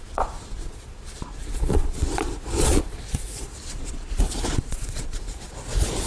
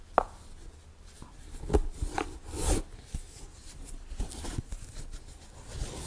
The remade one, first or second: first